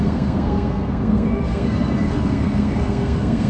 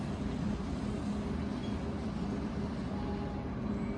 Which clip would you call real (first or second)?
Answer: second